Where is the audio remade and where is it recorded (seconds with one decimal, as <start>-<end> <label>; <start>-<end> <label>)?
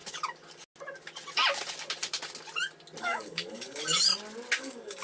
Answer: 0.0-3.0 recorded; 3.0-4.1 remade; 4.1-4.6 recorded; 4.6-5.0 remade